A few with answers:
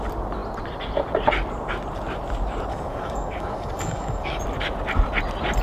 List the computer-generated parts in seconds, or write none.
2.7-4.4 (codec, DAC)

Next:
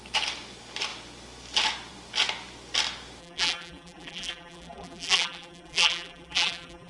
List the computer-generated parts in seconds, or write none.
3.2-6.9 (vocoder, BigVGAN v2)